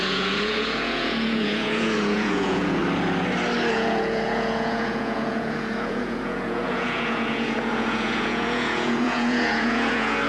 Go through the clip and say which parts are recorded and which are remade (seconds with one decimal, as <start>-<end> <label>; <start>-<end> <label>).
0.0-2.8 remade; 2.8-3.7 recorded; 3.7-10.3 remade